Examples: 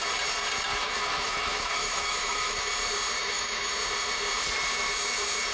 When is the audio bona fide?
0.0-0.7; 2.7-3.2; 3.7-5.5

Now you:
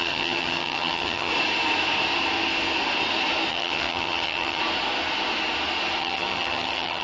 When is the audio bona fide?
1.3-3.5; 4.6-6.0

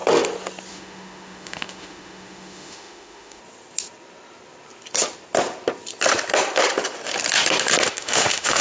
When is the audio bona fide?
0.0-0.7; 3.4-7.9